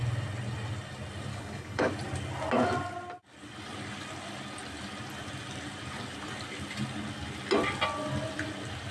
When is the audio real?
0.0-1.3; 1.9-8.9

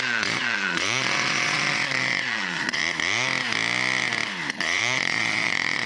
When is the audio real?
2.8-4.5

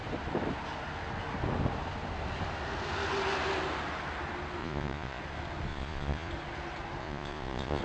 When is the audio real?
0.0-4.6; 5.2-5.7; 6.3-7.0

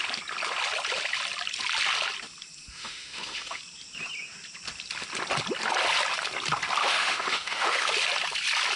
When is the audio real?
0.0-2.7; 3.6-6.8; 7.9-8.8

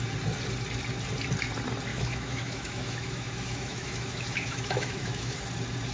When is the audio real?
0.0-1.9; 5.4-5.9

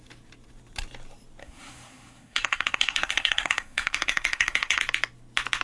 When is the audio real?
0.0-1.4; 4.8-5.6